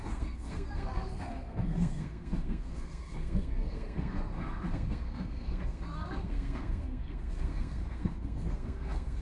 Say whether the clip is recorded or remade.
remade